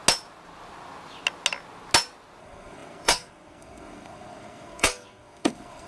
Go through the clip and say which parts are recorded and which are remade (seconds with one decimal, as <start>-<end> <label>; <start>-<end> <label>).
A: 0.0-2.4 recorded; 2.4-5.9 remade